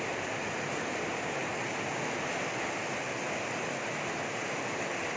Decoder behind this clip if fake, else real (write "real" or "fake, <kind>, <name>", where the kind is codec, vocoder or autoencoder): real